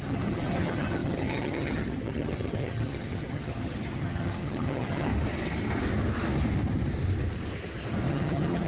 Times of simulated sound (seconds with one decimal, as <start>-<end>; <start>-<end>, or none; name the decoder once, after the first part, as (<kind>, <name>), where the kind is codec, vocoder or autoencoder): 0.0-5.1 (vocoder, HiFi-GAN); 8.1-8.7